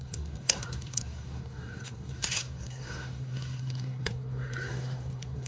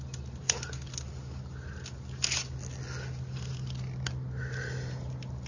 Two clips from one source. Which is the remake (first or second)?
first